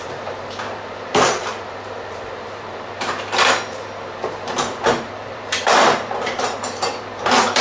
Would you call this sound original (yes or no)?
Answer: no